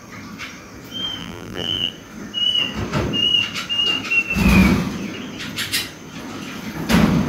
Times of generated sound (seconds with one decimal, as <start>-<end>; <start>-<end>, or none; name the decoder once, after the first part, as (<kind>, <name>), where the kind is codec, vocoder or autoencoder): 1.2-1.9 (vocoder, BigVGAN v2)